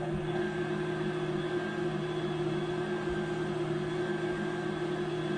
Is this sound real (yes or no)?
yes